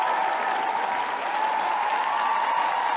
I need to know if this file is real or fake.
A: real